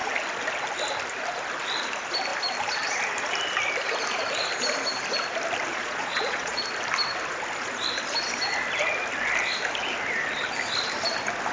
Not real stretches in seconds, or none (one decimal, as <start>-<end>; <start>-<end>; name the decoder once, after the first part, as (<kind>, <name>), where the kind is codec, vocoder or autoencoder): 5.7-6.6 (vocoder, Vocos)